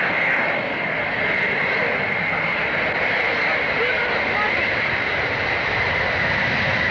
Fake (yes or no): no